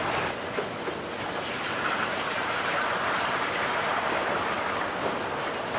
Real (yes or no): yes